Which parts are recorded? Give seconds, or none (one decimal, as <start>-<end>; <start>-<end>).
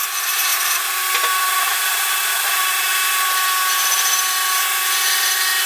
none